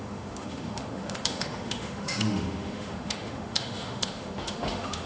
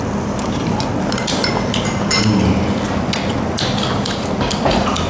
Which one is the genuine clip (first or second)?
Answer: second